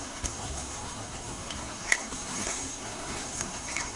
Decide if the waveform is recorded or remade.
remade